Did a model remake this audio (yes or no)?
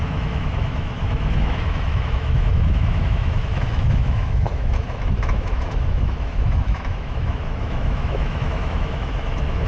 yes